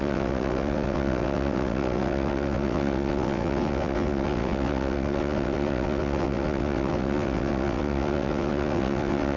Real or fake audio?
fake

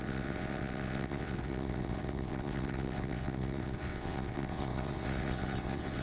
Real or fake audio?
fake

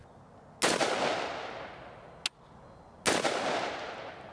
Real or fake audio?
real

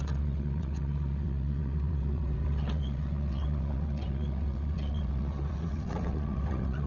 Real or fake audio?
fake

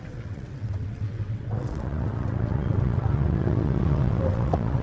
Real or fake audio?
fake